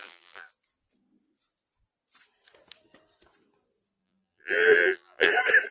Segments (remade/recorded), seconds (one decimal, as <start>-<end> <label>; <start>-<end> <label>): 0.0-0.5 remade; 0.5-4.0 recorded; 4.0-5.3 remade; 5.3-5.7 recorded